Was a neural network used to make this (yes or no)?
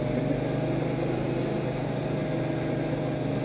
no